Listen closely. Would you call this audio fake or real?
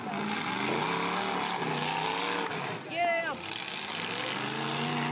real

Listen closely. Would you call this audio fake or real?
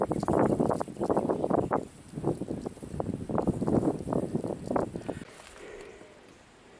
real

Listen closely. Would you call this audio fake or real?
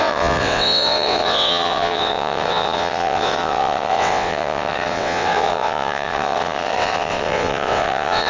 fake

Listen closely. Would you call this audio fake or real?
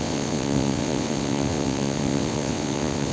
fake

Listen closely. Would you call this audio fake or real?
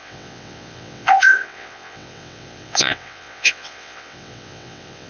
fake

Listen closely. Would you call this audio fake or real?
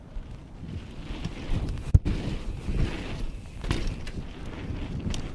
real